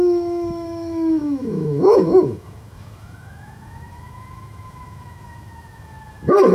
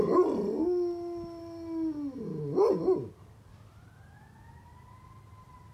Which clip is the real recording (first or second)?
second